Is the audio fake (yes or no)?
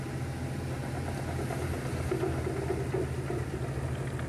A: no